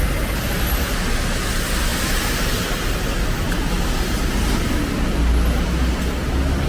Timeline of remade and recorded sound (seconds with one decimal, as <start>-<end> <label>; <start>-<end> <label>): 0.0-6.7 recorded